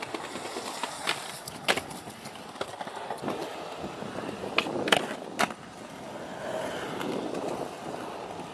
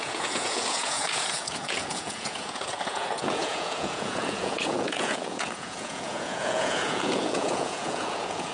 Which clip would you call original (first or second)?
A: first